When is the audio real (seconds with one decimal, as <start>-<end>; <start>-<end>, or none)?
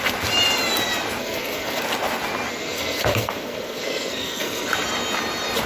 0.0-1.2; 1.8-2.5; 4.7-5.7